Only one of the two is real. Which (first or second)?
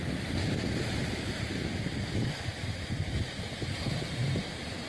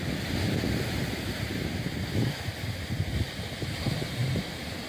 first